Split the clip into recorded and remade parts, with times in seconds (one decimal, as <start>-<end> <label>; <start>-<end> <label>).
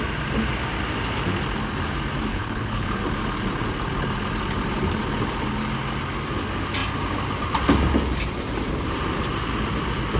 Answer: 0.0-2.3 recorded; 2.3-3.0 remade; 3.0-10.2 recorded